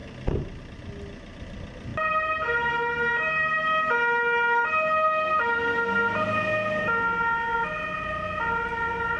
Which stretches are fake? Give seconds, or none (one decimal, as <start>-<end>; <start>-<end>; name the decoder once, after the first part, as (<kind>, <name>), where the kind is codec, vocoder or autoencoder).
none